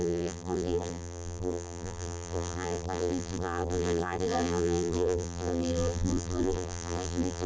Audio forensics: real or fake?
fake